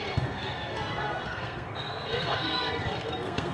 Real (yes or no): no